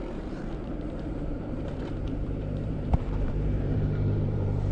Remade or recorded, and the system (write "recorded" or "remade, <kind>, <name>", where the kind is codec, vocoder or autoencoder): remade, vocoder, BigVGAN v2